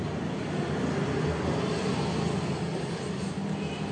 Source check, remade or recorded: recorded